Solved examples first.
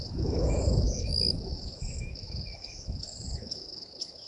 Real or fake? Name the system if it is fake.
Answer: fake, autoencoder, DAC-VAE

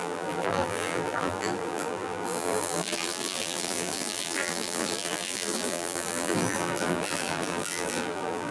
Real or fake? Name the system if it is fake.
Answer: fake, vocoder, BigVGAN v2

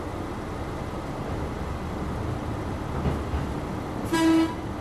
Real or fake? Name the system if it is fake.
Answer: real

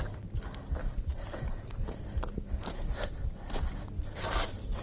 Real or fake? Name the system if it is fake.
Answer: real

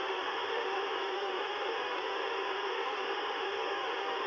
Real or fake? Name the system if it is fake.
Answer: fake, autoencoder, DAC-VAE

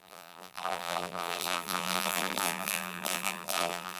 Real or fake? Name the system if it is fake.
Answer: fake, vocoder, BigVGAN v2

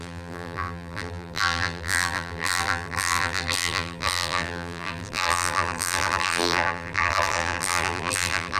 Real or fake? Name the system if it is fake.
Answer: fake, vocoder, BigVGAN v2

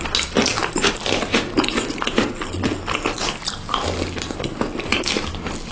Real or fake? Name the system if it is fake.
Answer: real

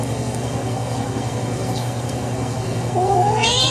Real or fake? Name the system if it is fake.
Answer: fake, codec, SNAC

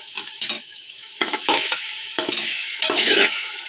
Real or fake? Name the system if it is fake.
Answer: fake, autoencoder, DAC-VAE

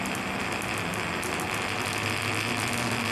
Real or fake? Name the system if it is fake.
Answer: real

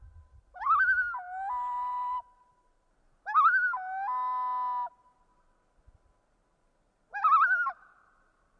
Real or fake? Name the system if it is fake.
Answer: real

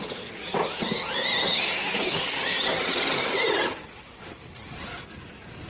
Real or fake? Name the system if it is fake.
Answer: real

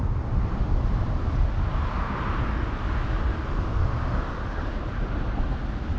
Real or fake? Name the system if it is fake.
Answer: real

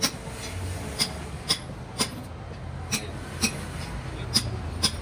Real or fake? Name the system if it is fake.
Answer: real